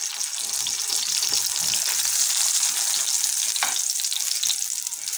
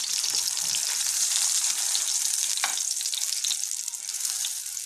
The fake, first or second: second